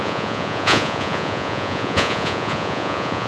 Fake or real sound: fake